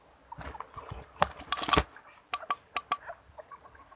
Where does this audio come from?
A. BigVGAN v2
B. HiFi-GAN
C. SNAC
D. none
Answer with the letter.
D